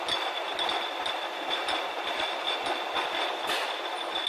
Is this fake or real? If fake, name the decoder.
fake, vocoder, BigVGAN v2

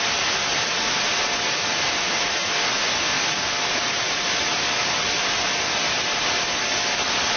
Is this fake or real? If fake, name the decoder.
real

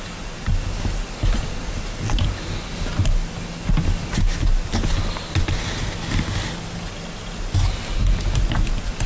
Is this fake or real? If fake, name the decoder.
real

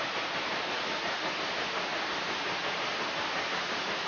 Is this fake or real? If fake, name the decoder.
real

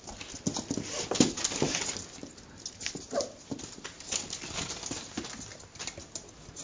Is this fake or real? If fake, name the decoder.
real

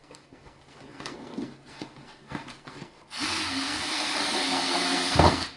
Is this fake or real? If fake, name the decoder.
fake, codec, SNAC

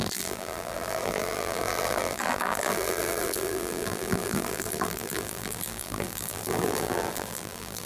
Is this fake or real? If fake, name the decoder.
fake, vocoder, BigVGAN v2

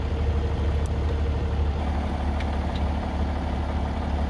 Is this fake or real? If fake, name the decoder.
real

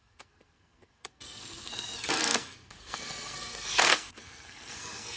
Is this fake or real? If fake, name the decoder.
fake, codec, SNAC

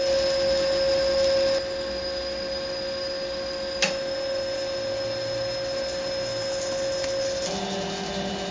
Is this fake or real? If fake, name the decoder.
real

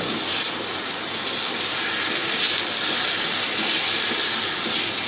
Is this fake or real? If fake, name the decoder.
real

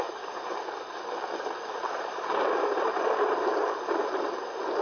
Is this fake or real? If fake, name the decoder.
fake, vocoder, BigVGAN v2